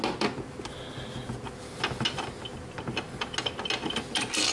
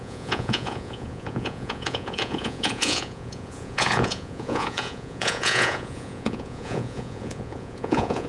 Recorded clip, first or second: first